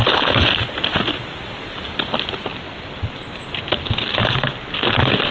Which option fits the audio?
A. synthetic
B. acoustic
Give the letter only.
B